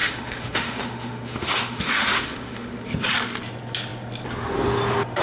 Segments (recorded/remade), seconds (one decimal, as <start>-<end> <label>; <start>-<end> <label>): 0.0-2.8 remade; 2.8-5.2 recorded